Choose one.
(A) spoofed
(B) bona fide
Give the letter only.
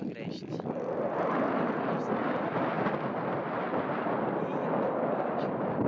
B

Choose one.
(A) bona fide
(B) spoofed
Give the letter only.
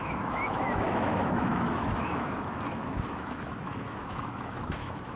B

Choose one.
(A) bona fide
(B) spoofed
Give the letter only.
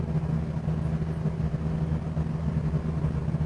A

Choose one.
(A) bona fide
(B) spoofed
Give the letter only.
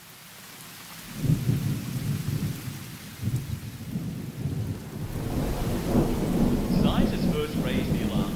A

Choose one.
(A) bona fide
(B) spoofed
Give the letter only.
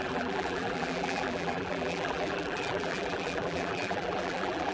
B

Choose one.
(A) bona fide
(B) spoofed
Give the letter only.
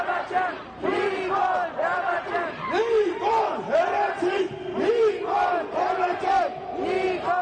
B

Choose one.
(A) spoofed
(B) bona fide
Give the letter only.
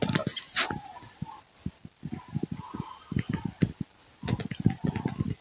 B